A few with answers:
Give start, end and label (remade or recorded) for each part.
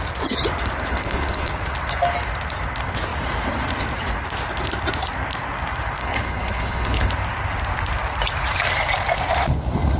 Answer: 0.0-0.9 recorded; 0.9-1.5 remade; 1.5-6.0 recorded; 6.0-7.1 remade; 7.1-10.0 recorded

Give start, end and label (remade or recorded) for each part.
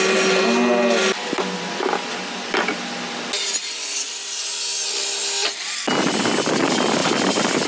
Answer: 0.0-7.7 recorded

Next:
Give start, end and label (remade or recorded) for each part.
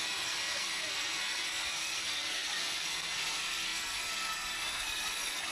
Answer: 0.0-5.5 remade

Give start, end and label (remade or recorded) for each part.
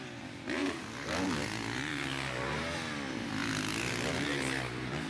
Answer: 0.0-5.1 recorded